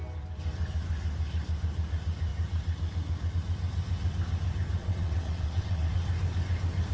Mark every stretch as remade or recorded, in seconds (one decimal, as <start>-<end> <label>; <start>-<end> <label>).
0.0-4.8 recorded; 4.8-5.9 remade; 5.9-6.9 recorded